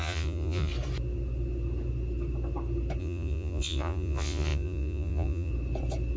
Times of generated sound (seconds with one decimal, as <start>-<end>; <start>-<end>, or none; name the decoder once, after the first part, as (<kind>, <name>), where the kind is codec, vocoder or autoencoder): 0.0-0.7 (vocoder, Vocos); 3.0-5.5